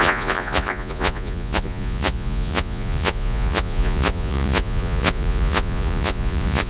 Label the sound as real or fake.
fake